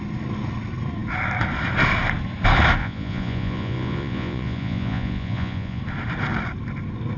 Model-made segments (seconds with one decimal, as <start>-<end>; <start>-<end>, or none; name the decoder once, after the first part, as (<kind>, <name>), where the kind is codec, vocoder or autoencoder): 2.8-5.8 (vocoder, Vocos)